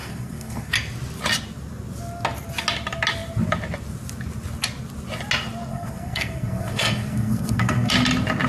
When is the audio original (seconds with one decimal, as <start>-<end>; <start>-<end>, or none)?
0.7-5.7; 7.9-8.5